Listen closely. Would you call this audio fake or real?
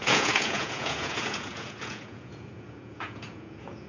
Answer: fake